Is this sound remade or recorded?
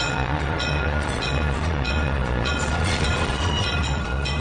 remade